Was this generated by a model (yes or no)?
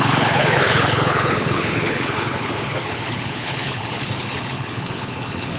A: yes